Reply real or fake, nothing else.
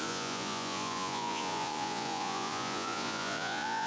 fake